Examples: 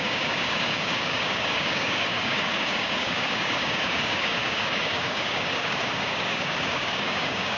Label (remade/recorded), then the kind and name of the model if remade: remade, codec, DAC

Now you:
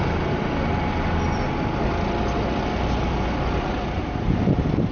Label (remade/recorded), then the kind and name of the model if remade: recorded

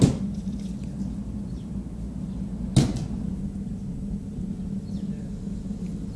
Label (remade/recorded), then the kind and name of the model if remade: recorded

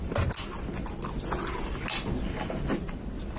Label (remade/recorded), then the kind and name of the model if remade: recorded